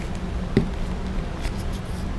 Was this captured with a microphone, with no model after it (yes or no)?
yes